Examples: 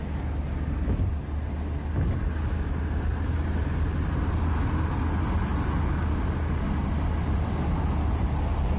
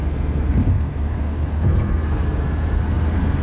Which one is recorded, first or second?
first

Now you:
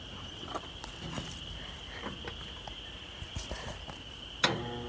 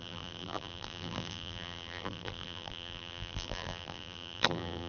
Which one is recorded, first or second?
first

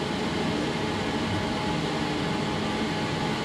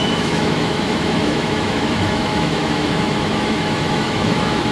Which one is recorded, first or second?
first